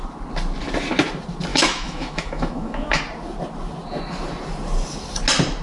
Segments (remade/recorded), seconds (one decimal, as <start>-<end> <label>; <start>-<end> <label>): 0.0-1.5 recorded; 1.5-3.0 remade; 3.0-5.6 recorded